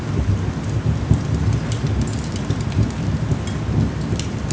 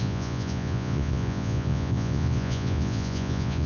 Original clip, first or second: first